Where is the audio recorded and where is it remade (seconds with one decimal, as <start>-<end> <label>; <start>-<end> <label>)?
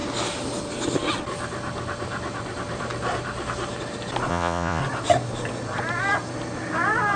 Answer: 0.0-4.3 recorded; 4.3-4.8 remade; 4.8-7.2 recorded